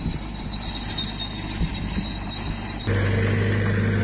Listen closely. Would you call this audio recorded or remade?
recorded